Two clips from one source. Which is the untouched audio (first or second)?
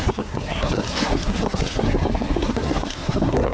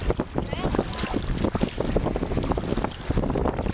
second